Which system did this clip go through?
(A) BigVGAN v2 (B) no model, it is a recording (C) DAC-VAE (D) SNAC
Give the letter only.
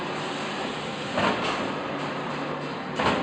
B